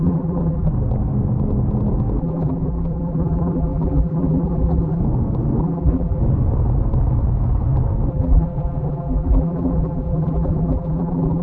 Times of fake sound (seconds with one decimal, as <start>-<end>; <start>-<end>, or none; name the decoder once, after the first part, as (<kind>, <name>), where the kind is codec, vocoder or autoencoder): 0.0-0.7 (vocoder, BigVGAN v2); 2.2-5.0; 5.6-6.2; 8.1-11.4